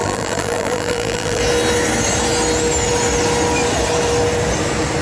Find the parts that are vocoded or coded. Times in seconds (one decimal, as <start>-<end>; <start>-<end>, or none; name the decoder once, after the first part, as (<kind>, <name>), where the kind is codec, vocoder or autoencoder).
0.0-1.4 (vocoder, BigVGAN v2)